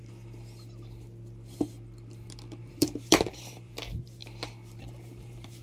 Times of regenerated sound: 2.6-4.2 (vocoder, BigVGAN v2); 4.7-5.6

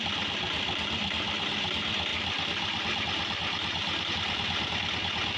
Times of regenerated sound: none

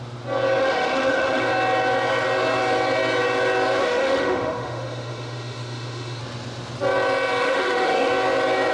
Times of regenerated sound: 0.6-1.4 (autoencoder, DAC-VAE); 3.8-6.2; 7.4-8.1

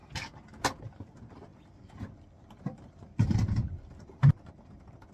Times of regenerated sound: 0.8-5.1 (vocoder, BigVGAN v2)

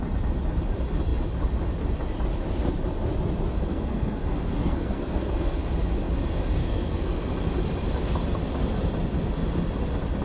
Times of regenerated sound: 3.5-5.6 (codec, SNAC); 6.6-7.5

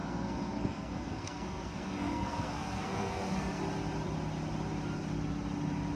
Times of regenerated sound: 0.0-3.6 (codec, SNAC)